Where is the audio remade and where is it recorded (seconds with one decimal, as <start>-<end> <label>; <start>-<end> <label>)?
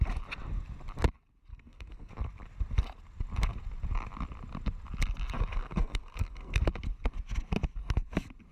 0.0-1.5 recorded; 1.5-2.1 remade; 2.1-5.5 recorded; 5.5-6.6 remade; 6.6-8.5 recorded